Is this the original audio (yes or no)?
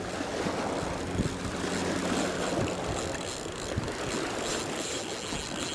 yes